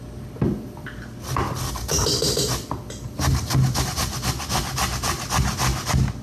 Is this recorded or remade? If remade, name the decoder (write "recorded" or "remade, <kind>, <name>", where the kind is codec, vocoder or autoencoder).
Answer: recorded